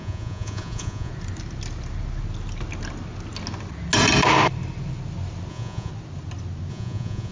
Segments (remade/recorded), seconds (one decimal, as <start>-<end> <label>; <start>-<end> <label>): 0.0-1.1 remade; 1.1-5.5 recorded; 5.5-5.9 remade; 5.9-6.7 recorded; 6.7-7.3 remade